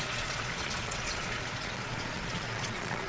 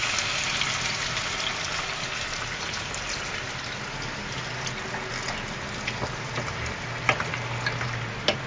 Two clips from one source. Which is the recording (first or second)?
second